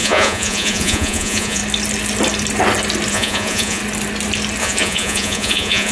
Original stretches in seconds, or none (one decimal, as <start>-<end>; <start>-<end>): 1.6-3.1; 3.8-4.6